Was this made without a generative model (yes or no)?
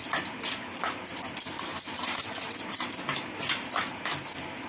yes